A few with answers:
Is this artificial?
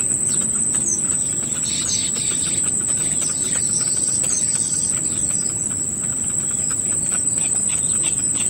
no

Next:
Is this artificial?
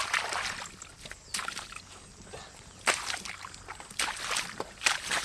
no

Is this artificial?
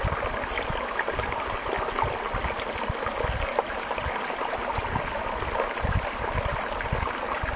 no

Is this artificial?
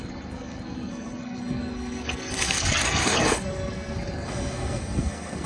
yes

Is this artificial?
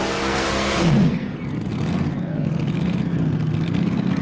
yes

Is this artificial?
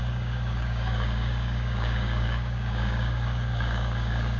yes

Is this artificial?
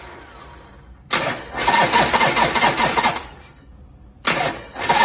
no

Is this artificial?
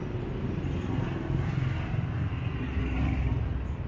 no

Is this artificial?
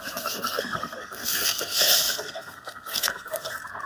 yes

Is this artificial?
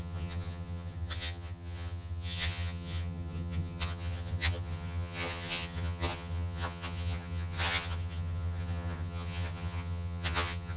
yes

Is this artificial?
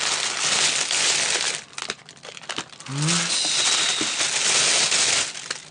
no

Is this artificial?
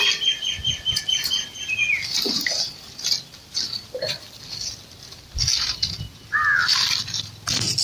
no